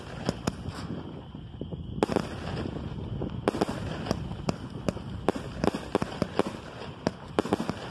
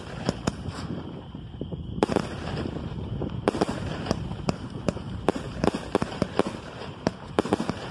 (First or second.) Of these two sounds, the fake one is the second